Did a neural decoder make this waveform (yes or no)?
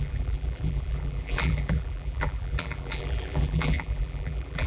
yes